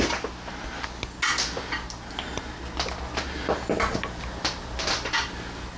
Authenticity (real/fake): real